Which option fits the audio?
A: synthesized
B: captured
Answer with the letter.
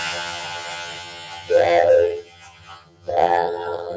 A